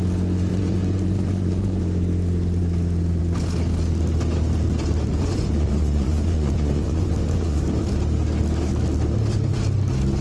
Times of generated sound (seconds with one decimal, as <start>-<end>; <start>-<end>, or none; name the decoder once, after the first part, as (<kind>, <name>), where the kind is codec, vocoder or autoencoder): 0.5-1.8 (vocoder, Vocos); 5.1-7.6